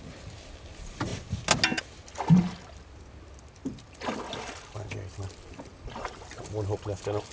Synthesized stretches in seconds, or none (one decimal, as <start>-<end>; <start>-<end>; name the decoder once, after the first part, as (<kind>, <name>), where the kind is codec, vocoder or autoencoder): 3.6-4.2 (vocoder, BigVGAN v2); 5.7-6.3